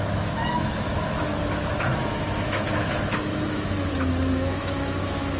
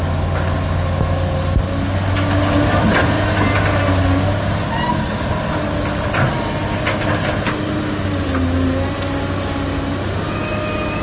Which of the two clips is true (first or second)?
second